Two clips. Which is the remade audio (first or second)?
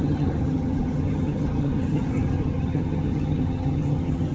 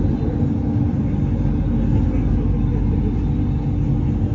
first